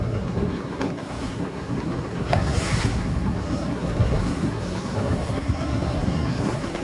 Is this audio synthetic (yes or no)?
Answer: yes